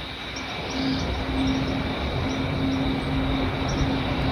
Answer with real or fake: real